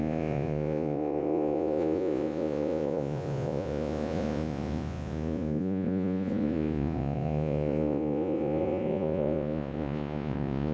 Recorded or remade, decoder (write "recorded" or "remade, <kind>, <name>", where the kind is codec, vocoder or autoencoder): remade, vocoder, Vocos